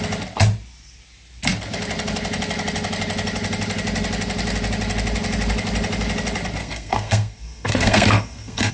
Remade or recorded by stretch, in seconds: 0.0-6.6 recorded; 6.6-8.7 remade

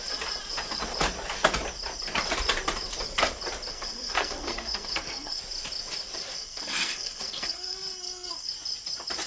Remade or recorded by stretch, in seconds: 0.0-3.7 recorded; 3.7-5.4 remade; 5.4-6.3 recorded; 6.3-8.5 remade; 8.5-9.3 recorded

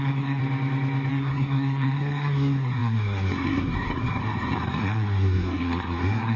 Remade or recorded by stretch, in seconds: 0.0-0.4 remade; 0.4-1.1 recorded; 1.1-6.4 remade